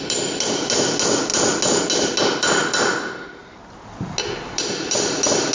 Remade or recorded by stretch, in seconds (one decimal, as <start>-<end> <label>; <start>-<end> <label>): 0.0-5.5 recorded